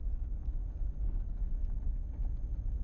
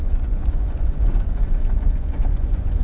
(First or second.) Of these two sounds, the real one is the first